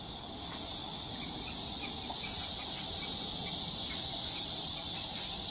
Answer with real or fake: real